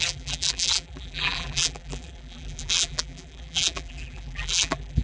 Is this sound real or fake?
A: fake